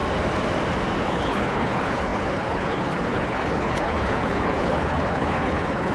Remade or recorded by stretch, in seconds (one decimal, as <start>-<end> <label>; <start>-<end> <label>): 0.0-1.0 recorded; 1.0-5.9 remade